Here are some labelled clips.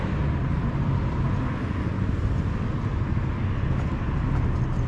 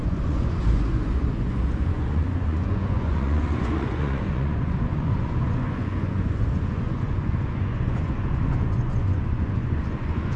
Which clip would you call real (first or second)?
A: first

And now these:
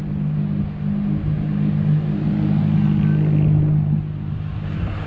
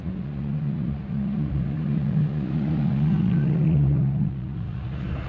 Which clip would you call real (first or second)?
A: first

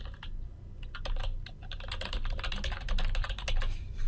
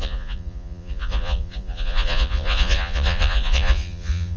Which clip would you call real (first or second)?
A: first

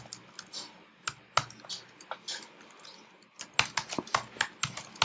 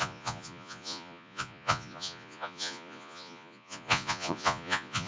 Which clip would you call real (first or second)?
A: first